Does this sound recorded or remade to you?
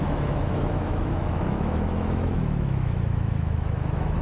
remade